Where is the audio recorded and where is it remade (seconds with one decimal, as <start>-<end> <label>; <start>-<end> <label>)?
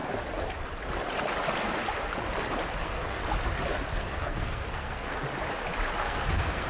0.0-2.8 recorded; 2.8-3.2 remade; 3.2-4.0 recorded; 4.0-5.2 remade; 5.2-6.0 recorded; 6.0-6.7 remade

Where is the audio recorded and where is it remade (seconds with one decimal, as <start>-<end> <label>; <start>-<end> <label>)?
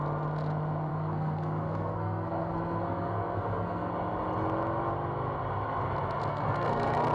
0.0-0.9 recorded; 0.9-3.9 remade; 3.9-6.3 recorded; 6.3-7.1 remade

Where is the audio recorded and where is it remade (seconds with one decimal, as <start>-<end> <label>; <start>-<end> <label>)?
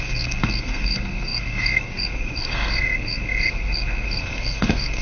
0.0-5.0 remade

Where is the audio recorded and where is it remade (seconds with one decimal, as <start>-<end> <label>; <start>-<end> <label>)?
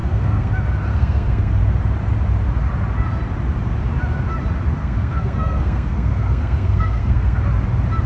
0.0-0.5 remade; 0.5-0.9 recorded; 0.9-1.6 remade; 1.6-4.8 recorded; 4.8-7.4 remade; 7.4-8.1 recorded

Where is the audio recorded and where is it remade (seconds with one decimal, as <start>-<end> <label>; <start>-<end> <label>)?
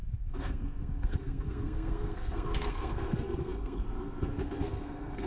0.0-5.3 remade